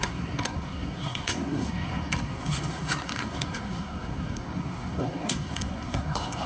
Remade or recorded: remade